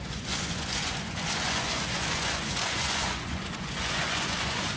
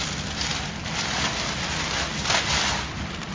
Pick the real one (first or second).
second